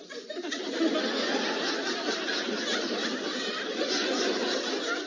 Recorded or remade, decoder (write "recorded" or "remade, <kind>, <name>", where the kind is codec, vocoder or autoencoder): recorded